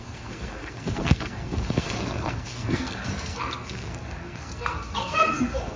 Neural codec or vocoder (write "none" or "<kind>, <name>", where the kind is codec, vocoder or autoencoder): codec, SNAC